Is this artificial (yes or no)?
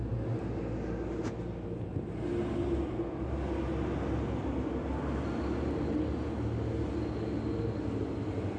no